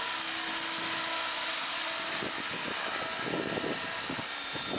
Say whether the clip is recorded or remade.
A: recorded